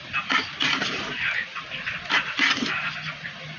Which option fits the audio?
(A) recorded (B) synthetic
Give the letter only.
A